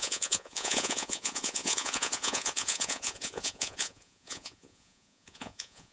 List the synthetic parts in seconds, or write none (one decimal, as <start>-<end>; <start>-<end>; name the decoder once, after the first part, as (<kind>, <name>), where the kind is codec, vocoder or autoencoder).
0.0-5.9 (vocoder, Vocos)